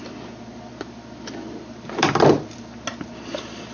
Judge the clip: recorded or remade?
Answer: recorded